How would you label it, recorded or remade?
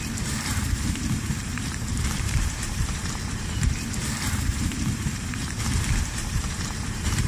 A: remade